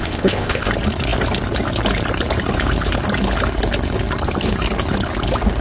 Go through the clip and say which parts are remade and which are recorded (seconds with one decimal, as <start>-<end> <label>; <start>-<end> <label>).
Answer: 0.0-0.7 remade; 0.7-5.6 recorded